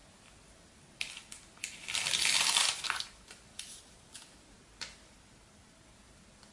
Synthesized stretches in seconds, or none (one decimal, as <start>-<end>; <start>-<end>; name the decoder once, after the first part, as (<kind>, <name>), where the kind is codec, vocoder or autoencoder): none